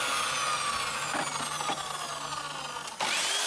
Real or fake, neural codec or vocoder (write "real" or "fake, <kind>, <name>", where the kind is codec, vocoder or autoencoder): real